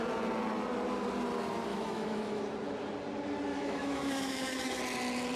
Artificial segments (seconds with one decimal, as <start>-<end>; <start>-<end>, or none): 1.7-2.4; 3.5-4.8